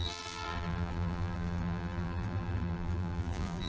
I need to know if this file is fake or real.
fake